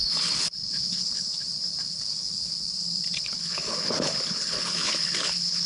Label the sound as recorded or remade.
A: remade